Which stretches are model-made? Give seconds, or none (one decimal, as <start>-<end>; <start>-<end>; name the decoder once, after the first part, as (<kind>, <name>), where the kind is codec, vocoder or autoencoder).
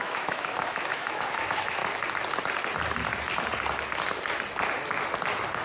0.0-1.8 (autoencoder, DAC-VAE)